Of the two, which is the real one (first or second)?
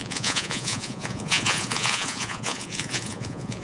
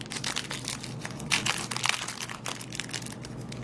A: second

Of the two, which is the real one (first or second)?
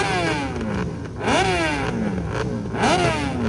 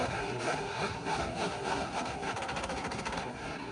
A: first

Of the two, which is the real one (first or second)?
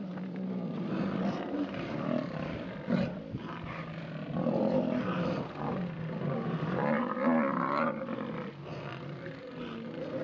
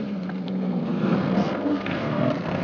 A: first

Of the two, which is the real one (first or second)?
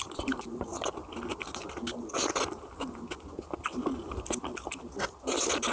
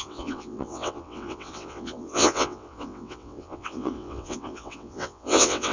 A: first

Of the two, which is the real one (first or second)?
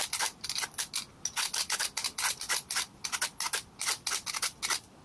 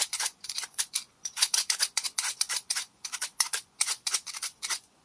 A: first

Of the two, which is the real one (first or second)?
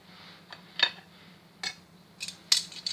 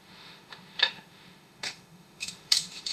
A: first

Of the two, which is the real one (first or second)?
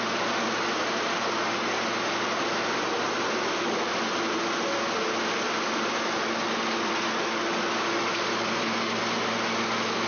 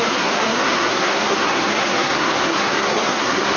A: first